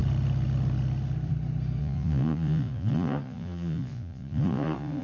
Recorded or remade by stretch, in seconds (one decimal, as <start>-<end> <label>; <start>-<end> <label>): 0.0-1.8 recorded; 1.8-5.0 remade